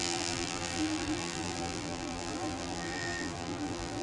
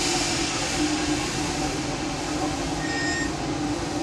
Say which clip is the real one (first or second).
second